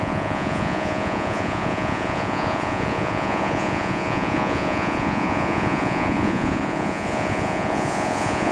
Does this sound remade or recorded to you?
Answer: remade